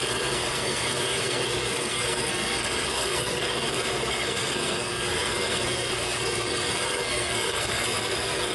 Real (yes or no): no